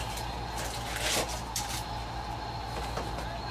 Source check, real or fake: real